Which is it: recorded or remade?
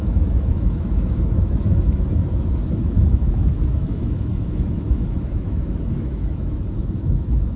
remade